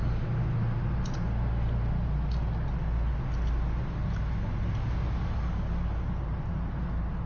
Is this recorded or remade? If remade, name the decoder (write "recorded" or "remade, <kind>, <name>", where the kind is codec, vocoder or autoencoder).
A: recorded